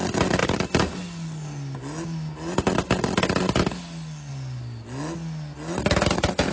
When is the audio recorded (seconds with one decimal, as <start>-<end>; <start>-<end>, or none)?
0.0-6.5